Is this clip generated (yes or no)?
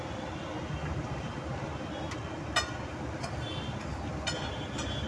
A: no